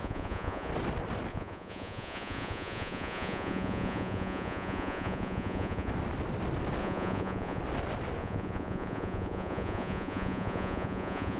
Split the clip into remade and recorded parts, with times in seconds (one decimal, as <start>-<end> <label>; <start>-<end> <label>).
0.0-0.7 remade; 0.7-1.3 recorded; 1.3-5.9 remade; 5.9-6.8 recorded; 6.8-7.6 remade; 7.6-8.2 recorded; 8.2-11.4 remade

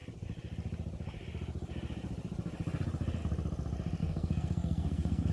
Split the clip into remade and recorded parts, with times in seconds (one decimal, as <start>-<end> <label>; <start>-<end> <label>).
0.0-4.0 recorded; 4.0-5.3 remade

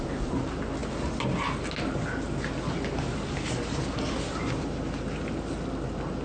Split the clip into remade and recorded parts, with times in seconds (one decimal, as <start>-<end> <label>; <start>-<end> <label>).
0.0-6.2 recorded

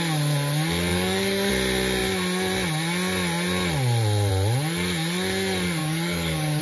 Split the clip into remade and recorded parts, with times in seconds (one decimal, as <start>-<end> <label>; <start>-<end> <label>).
0.0-0.9 recorded; 0.9-1.5 remade; 1.5-5.8 recorded; 5.8-6.6 remade

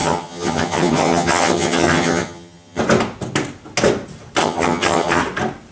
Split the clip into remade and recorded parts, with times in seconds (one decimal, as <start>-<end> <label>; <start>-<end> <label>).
0.0-2.8 remade; 2.8-4.4 recorded; 4.4-5.2 remade; 5.2-5.7 recorded

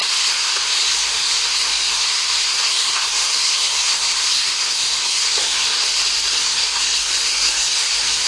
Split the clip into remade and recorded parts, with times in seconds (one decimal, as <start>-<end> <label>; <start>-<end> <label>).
0.0-5.8 remade; 5.8-6.4 recorded; 6.4-8.3 remade